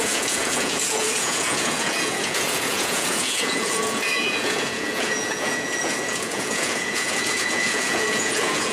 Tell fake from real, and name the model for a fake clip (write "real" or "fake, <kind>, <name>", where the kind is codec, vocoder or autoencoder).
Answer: fake, vocoder, Vocos